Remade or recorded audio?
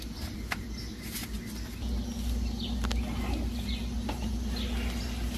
recorded